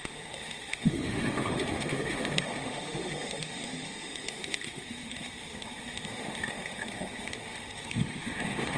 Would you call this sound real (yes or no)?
no